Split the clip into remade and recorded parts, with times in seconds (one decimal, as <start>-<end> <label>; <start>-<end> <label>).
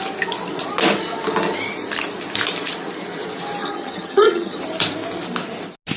0.0-3.6 recorded; 3.6-4.6 remade; 4.6-6.0 recorded